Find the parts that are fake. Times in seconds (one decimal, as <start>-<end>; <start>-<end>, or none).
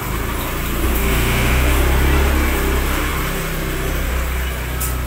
0.9-1.8